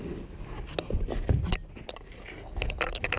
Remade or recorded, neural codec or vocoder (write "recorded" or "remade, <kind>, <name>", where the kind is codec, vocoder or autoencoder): recorded